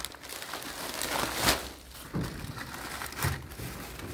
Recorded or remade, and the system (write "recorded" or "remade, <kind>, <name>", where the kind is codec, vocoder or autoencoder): recorded